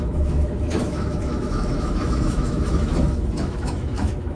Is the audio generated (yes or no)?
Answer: yes